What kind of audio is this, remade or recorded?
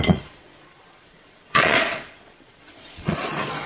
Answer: remade